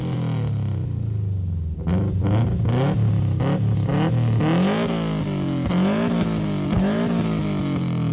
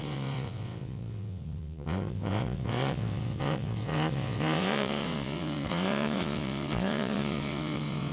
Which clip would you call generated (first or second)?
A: second